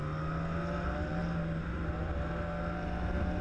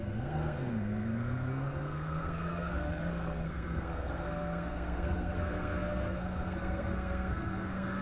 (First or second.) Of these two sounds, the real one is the first